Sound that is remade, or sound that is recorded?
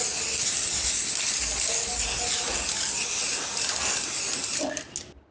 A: recorded